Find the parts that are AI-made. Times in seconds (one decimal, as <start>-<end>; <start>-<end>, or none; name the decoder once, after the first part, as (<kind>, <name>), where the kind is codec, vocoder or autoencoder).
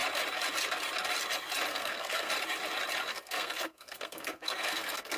1.7-2.3 (codec, SNAC); 3.1-5.2